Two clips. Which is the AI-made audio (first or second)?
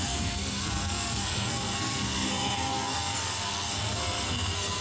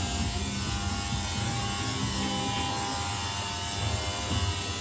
first